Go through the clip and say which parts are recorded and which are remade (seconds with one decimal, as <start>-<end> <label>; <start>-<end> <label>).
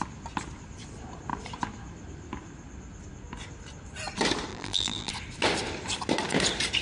0.0-4.5 recorded; 4.5-5.1 remade; 5.1-6.8 recorded